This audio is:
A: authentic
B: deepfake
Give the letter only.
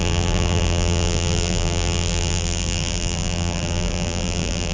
B